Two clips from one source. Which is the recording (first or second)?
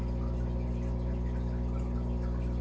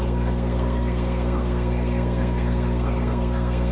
first